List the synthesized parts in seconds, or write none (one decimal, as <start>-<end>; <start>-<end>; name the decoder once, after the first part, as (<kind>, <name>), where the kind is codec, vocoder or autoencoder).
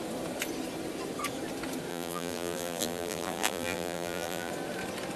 1.9-4.5 (vocoder, BigVGAN v2)